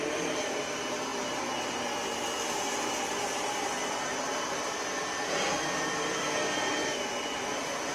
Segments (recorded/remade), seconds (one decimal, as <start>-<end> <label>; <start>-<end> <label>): 0.0-7.9 recorded

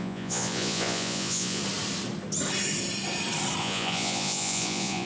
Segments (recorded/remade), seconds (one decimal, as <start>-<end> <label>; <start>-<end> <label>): 0.0-1.6 remade; 1.6-3.6 recorded; 3.6-5.1 remade

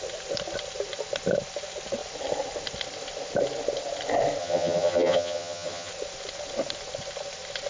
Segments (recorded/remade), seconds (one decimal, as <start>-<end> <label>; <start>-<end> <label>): 0.0-4.4 recorded; 4.4-5.9 remade; 5.9-7.7 recorded

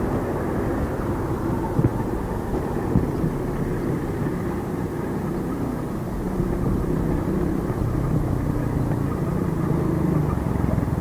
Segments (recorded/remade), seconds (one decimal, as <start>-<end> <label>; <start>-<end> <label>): 0.0-11.0 recorded

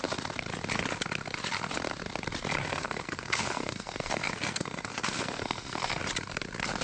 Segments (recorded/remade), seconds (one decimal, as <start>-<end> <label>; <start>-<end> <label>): 0.0-2.6 recorded; 2.6-6.0 remade; 6.0-6.8 recorded

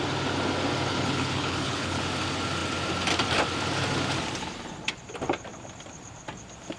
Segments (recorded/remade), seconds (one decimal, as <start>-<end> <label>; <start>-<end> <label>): 0.0-0.9 recorded; 0.9-2.0 remade; 2.0-6.8 recorded